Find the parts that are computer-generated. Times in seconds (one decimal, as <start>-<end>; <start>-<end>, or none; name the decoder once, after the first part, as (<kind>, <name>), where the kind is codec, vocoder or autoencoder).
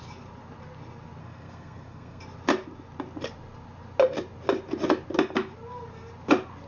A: 1.2-2.2 (codec, SNAC)